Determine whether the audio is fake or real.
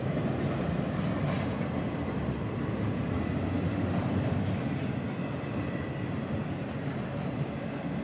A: real